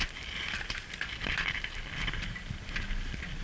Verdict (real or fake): real